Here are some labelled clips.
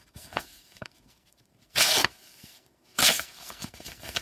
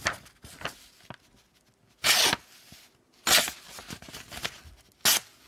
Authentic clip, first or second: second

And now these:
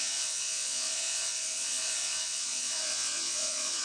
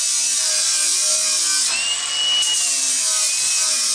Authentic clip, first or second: second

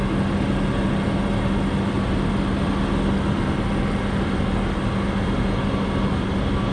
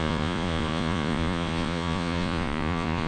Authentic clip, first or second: first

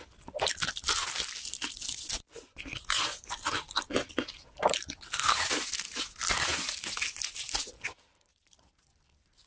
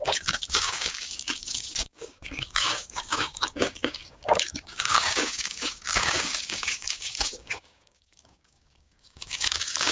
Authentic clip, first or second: first